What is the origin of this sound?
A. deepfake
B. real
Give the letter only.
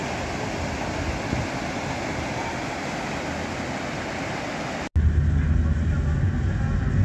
B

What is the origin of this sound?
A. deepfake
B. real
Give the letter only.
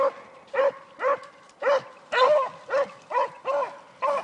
B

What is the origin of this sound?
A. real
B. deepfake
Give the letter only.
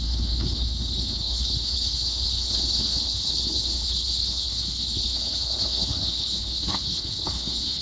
B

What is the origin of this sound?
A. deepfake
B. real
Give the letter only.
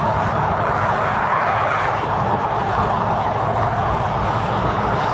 A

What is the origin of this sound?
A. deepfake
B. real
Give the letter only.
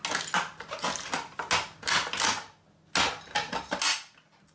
B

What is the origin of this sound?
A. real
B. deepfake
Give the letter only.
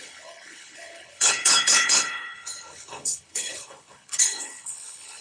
B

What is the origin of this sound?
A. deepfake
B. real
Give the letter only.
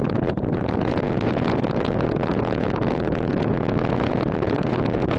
A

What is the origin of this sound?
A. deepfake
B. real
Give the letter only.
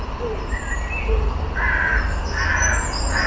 B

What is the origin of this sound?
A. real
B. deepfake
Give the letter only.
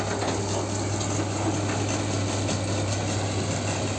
A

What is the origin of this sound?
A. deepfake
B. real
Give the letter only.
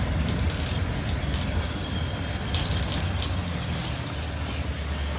B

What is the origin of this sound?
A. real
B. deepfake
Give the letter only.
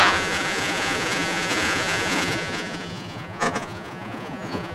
B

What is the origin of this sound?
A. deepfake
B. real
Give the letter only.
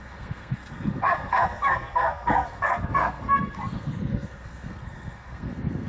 A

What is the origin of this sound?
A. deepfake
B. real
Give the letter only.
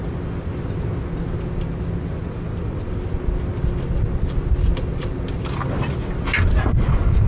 B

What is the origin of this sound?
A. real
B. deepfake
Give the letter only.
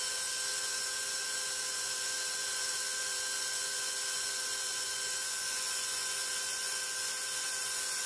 B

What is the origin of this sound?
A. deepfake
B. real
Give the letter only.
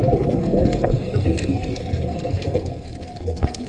A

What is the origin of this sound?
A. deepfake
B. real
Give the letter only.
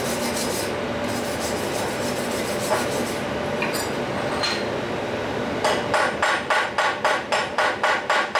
B